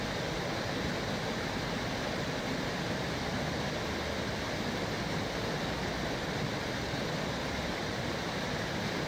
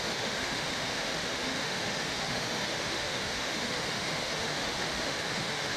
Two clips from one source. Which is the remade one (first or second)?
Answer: second